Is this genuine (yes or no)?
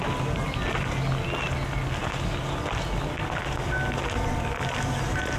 yes